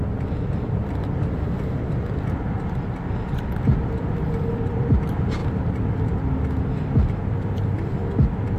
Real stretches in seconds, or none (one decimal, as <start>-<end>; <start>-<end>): 0.0-5.4; 6.8-8.6